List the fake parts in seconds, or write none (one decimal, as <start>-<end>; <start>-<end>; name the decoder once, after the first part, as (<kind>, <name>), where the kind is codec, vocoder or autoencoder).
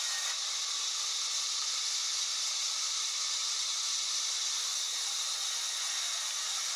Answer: 4.9-5.5 (vocoder, BigVGAN v2)